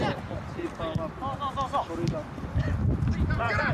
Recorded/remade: recorded